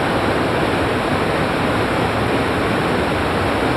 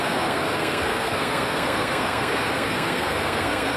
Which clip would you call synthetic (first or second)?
second